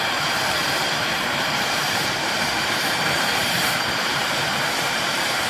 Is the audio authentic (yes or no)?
no